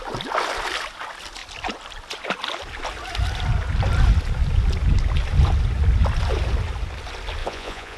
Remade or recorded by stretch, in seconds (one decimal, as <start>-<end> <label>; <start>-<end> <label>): 0.0-7.4 recorded; 7.4-8.0 remade